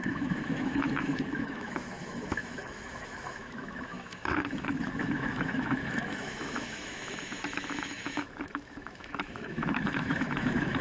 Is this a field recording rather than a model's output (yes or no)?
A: no